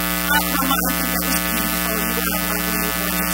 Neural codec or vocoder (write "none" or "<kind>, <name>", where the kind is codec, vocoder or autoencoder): none